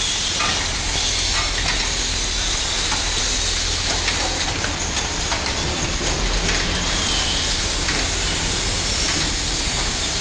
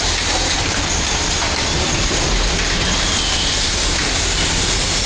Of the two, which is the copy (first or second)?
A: second